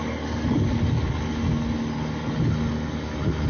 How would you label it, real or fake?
real